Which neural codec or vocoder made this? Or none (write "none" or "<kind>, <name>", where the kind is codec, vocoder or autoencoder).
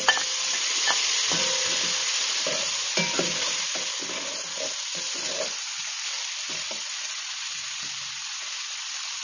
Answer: none